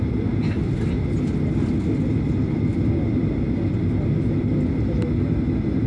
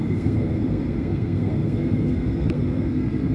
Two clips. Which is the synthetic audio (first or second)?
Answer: second